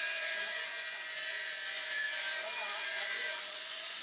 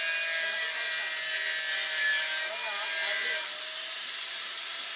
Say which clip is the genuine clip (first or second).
second